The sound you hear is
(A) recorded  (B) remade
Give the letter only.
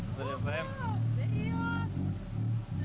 A